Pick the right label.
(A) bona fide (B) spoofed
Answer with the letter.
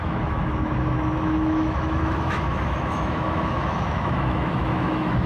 B